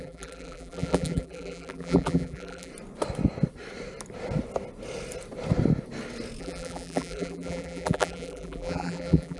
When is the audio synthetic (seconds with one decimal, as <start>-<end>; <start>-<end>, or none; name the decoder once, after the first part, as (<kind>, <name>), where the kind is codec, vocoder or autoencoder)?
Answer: 0.0-2.7 (vocoder, BigVGAN v2); 6.4-9.4